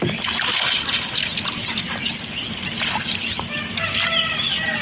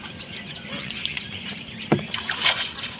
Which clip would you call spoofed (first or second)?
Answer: second